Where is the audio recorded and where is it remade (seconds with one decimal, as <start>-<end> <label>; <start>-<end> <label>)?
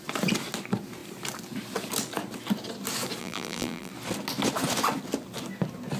0.0-3.2 recorded; 3.2-3.9 remade; 3.9-6.0 recorded